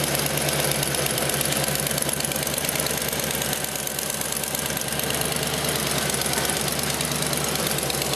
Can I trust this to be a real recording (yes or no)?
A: no